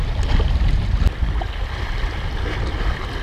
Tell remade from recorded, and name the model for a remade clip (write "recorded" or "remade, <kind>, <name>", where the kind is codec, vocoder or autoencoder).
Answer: recorded